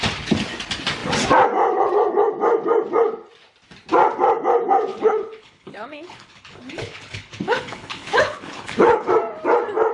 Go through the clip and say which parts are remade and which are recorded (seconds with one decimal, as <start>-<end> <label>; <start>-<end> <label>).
0.0-4.9 recorded; 4.9-9.1 remade; 9.1-9.9 recorded